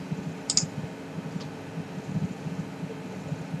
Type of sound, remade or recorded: recorded